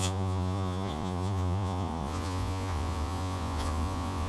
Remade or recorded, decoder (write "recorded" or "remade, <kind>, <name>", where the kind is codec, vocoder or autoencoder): remade, vocoder, Vocos